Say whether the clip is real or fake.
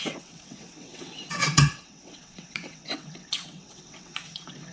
fake